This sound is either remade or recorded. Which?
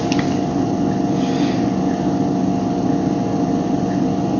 recorded